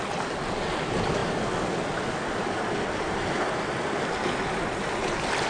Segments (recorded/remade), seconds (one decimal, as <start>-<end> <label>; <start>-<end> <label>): 0.0-5.5 recorded